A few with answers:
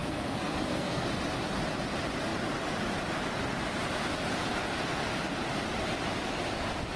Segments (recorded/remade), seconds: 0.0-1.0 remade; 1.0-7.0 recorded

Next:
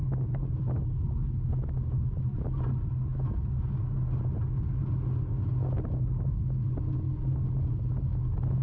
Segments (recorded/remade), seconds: 0.0-8.6 recorded

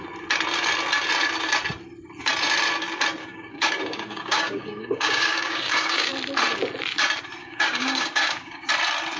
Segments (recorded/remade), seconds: 0.0-3.2 recorded; 3.2-6.1 remade; 6.1-7.4 recorded; 7.4-8.7 remade; 8.7-9.2 recorded

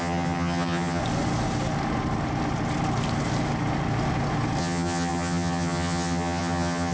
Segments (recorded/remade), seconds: 0.0-1.0 remade; 1.0-4.6 recorded; 4.6-6.9 remade

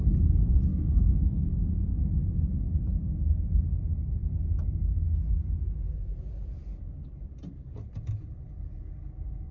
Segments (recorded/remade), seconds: 0.0-0.7 recorded; 0.7-1.5 remade; 1.5-9.5 recorded